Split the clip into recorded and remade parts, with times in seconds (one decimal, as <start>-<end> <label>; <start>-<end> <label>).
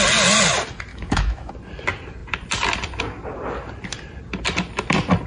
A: 0.0-0.9 recorded; 0.9-1.5 remade; 1.5-5.3 recorded